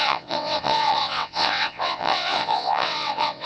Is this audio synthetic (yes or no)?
yes